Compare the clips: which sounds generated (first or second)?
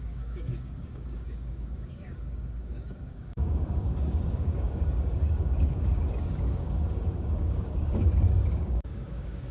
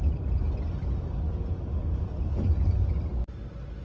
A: first